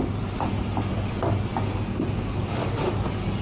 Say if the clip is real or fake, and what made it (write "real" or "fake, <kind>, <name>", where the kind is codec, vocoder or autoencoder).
real